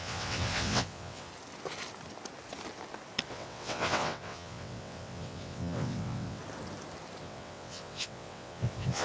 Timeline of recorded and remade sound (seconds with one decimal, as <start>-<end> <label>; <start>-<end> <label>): 0.0-1.3 remade; 1.3-3.3 recorded; 3.3-6.4 remade; 6.4-7.2 recorded; 7.2-9.0 remade